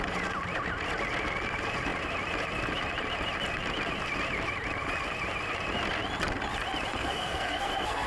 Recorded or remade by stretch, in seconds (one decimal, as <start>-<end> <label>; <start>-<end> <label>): 0.0-6.9 recorded; 6.9-8.1 remade